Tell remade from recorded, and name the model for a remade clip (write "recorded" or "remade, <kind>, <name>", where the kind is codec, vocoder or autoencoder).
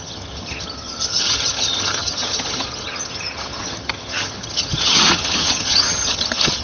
remade, vocoder, HiFi-GAN